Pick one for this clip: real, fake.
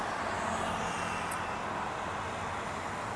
real